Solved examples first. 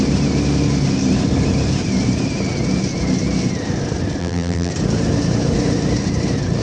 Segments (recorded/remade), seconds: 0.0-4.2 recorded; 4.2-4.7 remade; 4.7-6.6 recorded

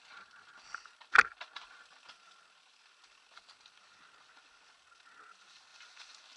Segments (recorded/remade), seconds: 0.0-6.4 recorded

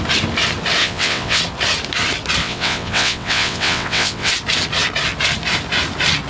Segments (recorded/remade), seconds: 0.0-0.8 recorded; 0.8-1.4 remade; 1.4-2.4 recorded; 2.4-4.3 remade; 4.3-6.3 recorded

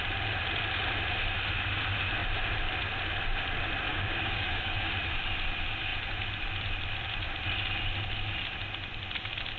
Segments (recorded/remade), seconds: 0.0-3.9 recorded; 3.9-4.9 remade; 4.9-9.6 recorded

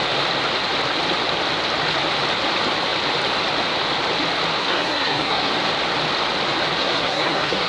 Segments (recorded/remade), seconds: 0.0-4.6 recorded; 4.6-5.5 remade; 5.5-6.8 recorded; 6.8-7.7 remade

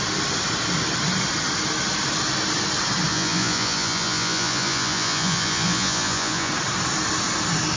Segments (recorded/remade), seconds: 0.0-3.1 recorded; 3.1-6.5 remade; 6.5-7.8 recorded

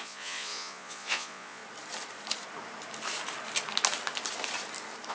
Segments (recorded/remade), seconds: 0.0-1.6 remade; 1.6-5.1 recorded

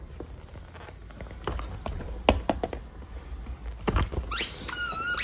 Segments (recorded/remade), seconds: 0.0-5.2 recorded